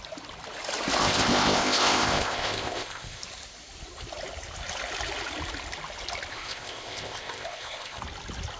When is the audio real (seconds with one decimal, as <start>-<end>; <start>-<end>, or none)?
0.0-1.0; 3.2-6.3; 8.0-8.6